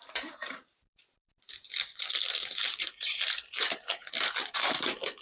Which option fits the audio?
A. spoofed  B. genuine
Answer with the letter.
A